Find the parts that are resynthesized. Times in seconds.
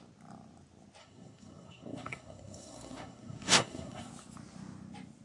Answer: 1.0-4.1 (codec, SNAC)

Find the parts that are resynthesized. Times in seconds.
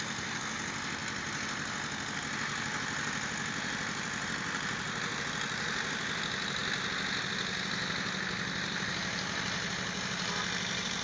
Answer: none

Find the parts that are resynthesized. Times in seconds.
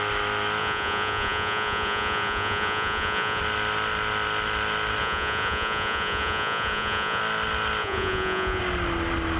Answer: 0.6-3.4 (vocoder, Vocos); 5.0-7.2; 7.8-8.6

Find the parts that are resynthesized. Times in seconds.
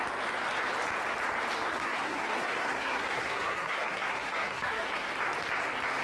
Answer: 1.7-5.1 (codec, SNAC)